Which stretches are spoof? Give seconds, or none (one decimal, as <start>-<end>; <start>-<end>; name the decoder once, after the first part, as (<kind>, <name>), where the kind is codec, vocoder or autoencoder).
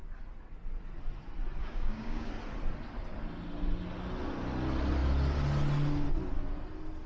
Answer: 1.6-2.3 (codec, DAC)